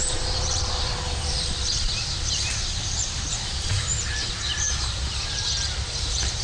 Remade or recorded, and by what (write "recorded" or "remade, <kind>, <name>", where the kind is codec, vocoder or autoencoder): remade, vocoder, BigVGAN v2